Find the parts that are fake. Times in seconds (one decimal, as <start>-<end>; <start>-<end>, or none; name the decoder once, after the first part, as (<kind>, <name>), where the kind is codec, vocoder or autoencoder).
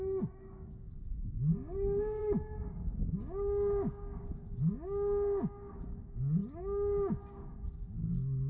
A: 0.0-8.5 (codec, DAC)